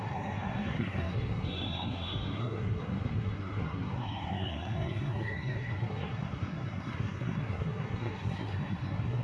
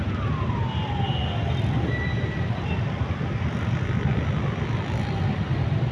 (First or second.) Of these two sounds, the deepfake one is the first